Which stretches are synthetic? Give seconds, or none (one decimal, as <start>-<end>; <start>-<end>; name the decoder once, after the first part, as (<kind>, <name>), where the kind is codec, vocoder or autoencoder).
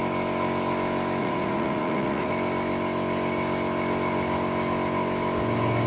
1.2-2.3 (vocoder, Vocos)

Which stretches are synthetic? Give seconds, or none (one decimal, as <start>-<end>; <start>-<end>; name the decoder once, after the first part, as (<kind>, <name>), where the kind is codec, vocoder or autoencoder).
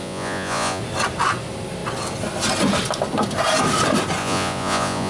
0.0-0.8 (vocoder, Vocos); 4.2-5.1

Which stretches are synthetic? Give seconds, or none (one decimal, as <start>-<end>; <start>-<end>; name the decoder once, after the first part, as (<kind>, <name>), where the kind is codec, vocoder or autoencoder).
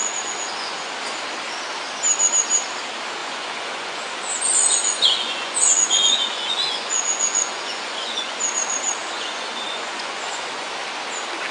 0.0-0.9 (vocoder, Vocos); 3.2-8.4; 9.0-10.7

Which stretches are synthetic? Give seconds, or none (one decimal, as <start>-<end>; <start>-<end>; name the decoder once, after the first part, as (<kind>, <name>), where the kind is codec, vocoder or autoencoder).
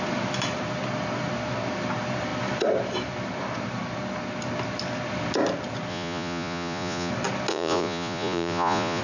5.9-7.1 (vocoder, Vocos); 7.5-9.0